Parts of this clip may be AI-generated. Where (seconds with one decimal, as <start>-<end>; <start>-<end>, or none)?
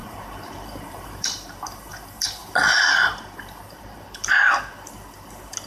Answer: 0.0-1.9; 2.4-4.5